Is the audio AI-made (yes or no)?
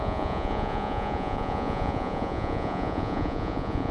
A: yes